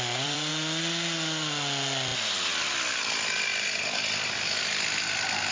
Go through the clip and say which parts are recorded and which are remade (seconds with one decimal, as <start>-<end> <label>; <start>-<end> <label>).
0.0-0.5 remade; 0.5-3.0 recorded; 3.0-5.5 remade